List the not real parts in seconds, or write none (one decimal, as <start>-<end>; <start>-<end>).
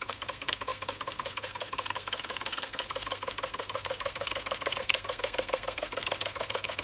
0.0-6.8